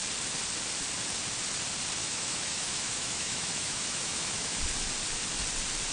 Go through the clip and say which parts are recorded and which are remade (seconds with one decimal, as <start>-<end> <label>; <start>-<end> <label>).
0.0-2.0 recorded; 2.0-4.6 remade; 4.6-5.9 recorded